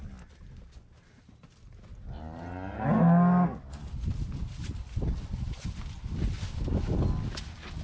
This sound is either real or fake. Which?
real